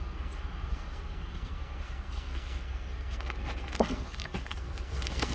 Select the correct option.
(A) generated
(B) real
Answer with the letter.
A